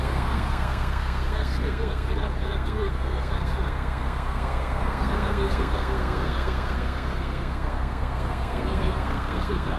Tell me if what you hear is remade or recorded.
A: remade